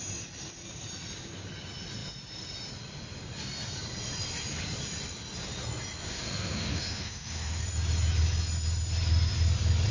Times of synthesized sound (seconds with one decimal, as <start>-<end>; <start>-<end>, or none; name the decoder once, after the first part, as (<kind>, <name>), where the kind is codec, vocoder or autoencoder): 6.0-7.6 (autoencoder, DAC-VAE)